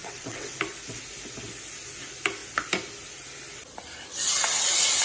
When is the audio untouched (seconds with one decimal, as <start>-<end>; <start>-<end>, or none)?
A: 0.6-5.0